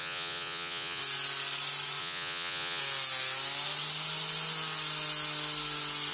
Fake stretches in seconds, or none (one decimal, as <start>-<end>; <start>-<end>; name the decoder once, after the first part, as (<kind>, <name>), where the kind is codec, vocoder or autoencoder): 0.0-1.0 (vocoder, Vocos); 2.0-2.8